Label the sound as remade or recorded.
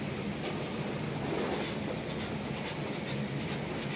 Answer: recorded